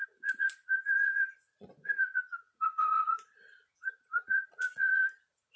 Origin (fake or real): fake